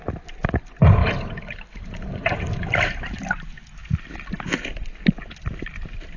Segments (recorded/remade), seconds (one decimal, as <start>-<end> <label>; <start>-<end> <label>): 0.0-1.0 recorded; 1.0-3.2 remade; 3.2-6.2 recorded